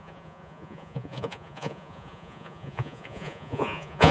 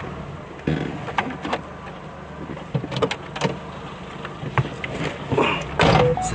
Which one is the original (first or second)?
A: second